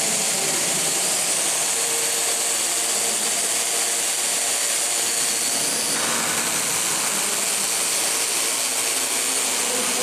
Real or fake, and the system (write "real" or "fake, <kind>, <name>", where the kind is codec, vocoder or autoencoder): real